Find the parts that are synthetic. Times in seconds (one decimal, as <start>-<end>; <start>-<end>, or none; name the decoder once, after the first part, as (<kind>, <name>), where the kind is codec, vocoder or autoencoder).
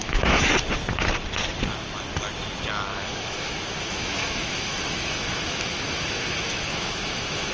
0.0-0.5 (autoencoder, DAC-VAE); 2.9-7.5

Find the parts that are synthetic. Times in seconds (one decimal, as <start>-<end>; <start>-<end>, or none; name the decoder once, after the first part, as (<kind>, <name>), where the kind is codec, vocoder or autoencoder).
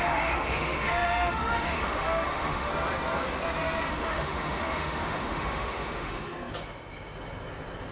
0.0-2.7 (autoencoder, DAC-VAE); 3.9-6.5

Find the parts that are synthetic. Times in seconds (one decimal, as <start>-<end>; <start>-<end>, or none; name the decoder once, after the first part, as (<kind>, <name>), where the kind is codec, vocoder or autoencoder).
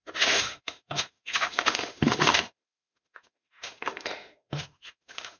0.0-5.4 (autoencoder, DAC-VAE)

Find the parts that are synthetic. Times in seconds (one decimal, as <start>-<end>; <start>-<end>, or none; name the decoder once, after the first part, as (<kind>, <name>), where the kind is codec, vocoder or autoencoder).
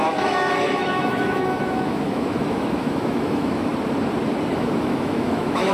0.0-3.7 (autoencoder, DAC-VAE); 4.5-5.7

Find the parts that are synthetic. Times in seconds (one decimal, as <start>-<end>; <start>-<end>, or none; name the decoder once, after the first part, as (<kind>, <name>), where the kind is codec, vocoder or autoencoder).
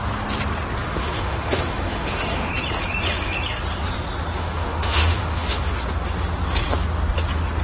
0.8-2.5 (autoencoder, DAC-VAE); 4.4-5.7